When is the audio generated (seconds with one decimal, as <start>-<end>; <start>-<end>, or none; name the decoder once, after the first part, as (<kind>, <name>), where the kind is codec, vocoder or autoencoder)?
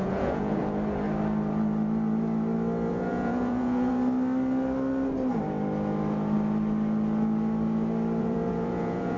0.0-0.6 (vocoder, Vocos); 2.9-3.9; 8.2-9.2